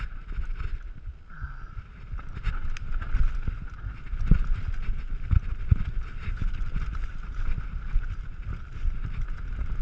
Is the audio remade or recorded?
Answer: recorded